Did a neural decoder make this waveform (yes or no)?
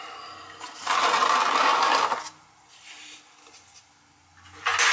no